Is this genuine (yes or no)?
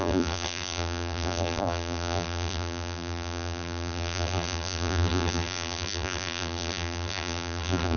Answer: no